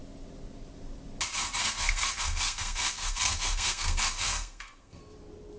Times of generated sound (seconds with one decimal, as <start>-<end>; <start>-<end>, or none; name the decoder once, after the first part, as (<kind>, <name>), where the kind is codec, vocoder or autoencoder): 1.6-5.0 (codec, SNAC)